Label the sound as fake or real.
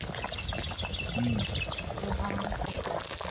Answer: real